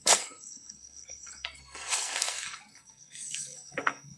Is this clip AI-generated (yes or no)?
yes